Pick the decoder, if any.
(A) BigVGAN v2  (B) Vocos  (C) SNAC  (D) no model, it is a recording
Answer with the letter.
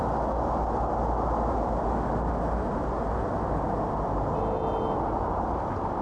D